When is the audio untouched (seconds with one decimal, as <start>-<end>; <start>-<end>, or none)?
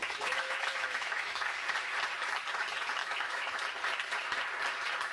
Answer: 1.7-3.0; 3.6-5.1